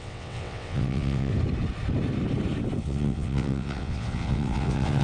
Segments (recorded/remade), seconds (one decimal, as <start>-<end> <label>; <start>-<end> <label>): 0.0-1.3 remade; 1.3-2.8 recorded; 2.8-5.0 remade